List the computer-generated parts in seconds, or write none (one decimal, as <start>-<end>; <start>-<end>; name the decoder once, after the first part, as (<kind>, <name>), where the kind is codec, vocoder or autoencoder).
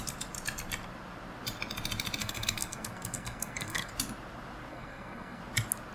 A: 2.2-3.9 (codec, SNAC); 4.7-5.4